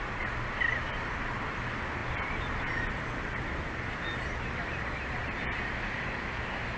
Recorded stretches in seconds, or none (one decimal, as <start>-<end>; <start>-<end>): 0.0-6.8